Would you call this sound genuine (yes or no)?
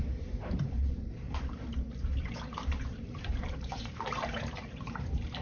no